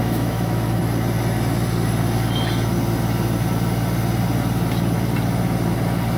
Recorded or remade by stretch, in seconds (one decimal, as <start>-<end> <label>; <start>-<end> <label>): 0.0-0.8 remade; 0.8-6.2 recorded